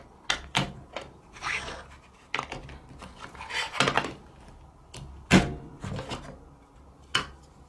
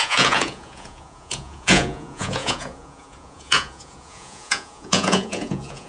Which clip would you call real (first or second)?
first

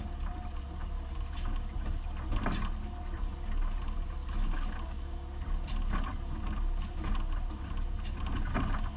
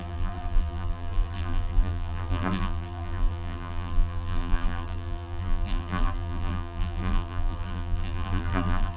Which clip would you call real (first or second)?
first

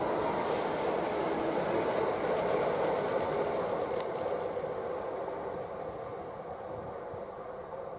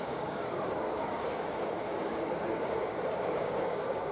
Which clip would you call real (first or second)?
first